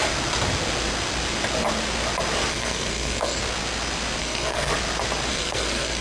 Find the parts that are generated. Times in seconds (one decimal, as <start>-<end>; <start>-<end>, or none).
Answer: 2.5-3.4; 4.2-4.7; 5.3-6.0

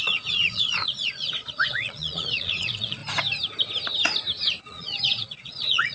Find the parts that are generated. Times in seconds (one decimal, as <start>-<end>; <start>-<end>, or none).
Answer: 0.0-3.0; 4.6-5.9

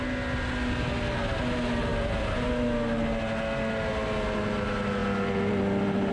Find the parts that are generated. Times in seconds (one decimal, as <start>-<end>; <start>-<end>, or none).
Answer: none

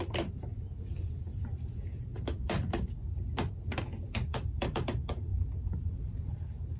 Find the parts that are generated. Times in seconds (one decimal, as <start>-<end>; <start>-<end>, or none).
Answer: 0.0-0.5; 1.5-2.1; 4.1-6.8

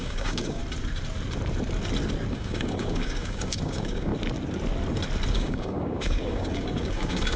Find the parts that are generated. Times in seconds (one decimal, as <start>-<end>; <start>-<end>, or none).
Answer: 0.0-0.6; 2.3-4.1; 5.3-7.4

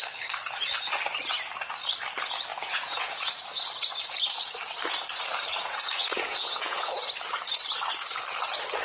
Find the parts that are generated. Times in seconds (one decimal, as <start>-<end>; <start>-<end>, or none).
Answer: 2.5-3.3; 5.5-7.0